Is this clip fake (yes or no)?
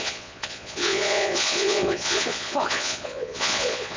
yes